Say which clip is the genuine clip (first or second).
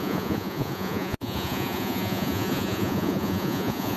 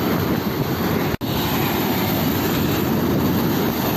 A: second